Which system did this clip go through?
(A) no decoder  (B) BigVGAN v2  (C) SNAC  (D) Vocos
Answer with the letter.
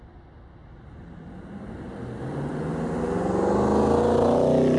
A